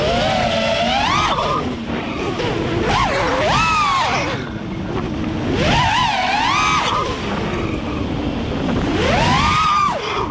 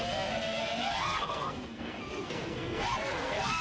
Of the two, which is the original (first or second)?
first